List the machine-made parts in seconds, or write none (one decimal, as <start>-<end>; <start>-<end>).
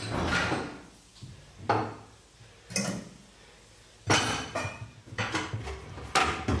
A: none